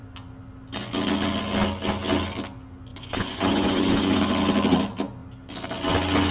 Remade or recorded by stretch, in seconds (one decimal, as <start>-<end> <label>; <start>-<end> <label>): 0.0-2.9 recorded; 2.9-4.2 remade; 4.2-6.3 recorded